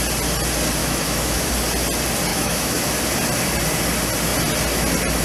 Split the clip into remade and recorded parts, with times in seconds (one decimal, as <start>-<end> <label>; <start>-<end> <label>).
0.0-0.8 recorded; 0.8-1.5 remade; 1.5-2.3 recorded; 2.3-2.9 remade; 2.9-5.2 recorded